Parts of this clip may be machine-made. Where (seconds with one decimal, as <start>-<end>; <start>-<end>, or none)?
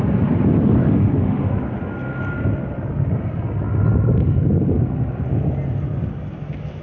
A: 0.8-1.5